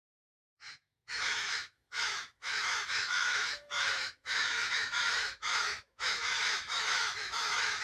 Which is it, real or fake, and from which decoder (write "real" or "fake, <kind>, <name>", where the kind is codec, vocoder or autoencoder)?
fake, autoencoder, DAC-VAE